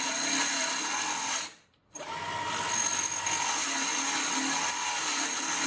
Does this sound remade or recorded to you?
recorded